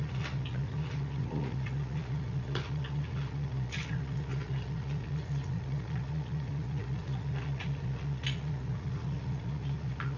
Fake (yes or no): yes